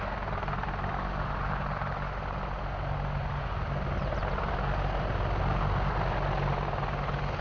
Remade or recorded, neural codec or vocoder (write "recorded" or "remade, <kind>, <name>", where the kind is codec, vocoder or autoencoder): recorded